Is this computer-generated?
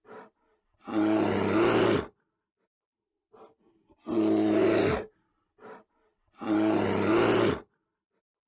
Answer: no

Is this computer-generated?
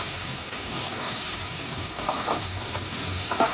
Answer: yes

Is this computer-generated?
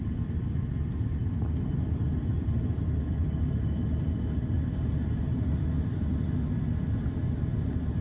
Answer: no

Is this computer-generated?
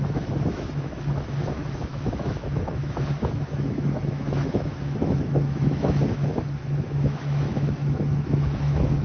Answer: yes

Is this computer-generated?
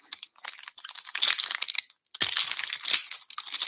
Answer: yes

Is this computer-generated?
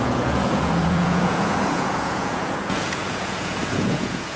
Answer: yes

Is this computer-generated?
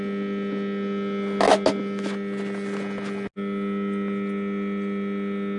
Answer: no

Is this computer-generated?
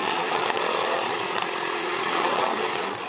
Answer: yes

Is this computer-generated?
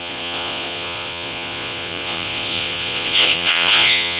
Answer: yes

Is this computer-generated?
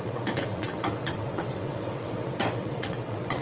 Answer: yes